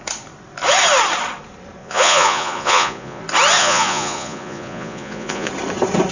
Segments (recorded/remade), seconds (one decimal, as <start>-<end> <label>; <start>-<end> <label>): 0.0-1.8 recorded; 1.8-3.2 remade; 3.2-3.6 recorded; 3.6-5.5 remade; 5.5-6.1 recorded